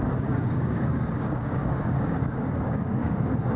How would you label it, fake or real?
fake